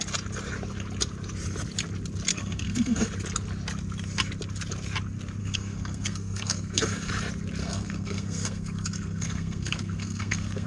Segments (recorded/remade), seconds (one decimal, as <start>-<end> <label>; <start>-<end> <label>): 0.0-2.3 recorded; 2.3-3.1 remade; 3.1-5.4 recorded; 5.4-7.1 remade; 7.1-7.6 recorded; 7.6-10.7 remade